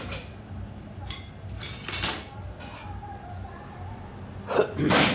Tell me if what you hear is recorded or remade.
recorded